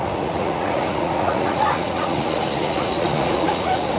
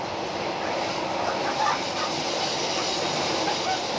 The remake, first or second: first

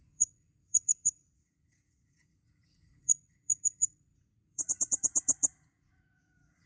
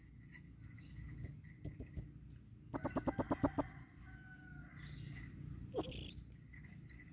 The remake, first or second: first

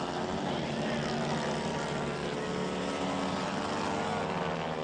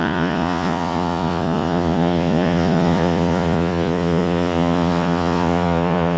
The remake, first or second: second